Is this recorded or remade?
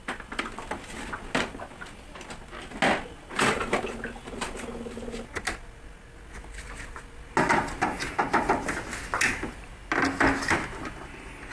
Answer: recorded